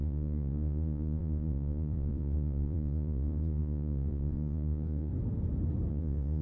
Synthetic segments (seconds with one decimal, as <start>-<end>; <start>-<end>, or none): 0.0-5.1; 5.9-6.4